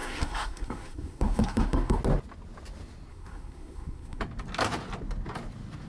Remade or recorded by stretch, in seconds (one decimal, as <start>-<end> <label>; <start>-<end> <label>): 0.0-2.0 remade; 2.0-3.1 recorded; 3.1-4.2 remade; 4.2-5.9 recorded